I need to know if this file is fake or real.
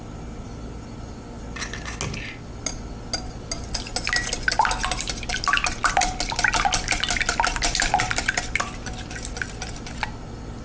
real